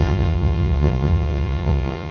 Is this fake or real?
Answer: fake